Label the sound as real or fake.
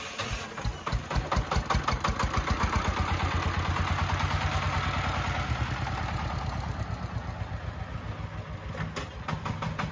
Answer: real